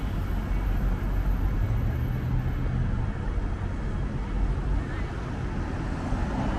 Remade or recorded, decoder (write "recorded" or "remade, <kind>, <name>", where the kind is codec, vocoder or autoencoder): recorded